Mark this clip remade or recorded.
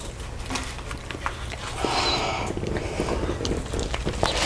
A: recorded